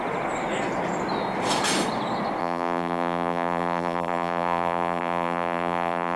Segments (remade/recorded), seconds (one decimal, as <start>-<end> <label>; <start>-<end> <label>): 0.0-2.4 recorded; 2.4-6.2 remade